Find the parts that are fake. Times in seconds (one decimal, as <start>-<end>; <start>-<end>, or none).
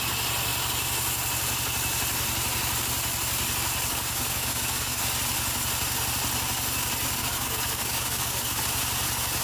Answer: 3.9-5.0; 7.2-8.6